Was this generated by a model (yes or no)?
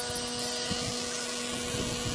no